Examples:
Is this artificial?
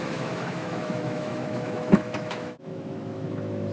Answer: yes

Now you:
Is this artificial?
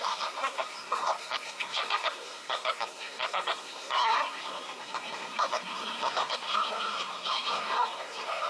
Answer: yes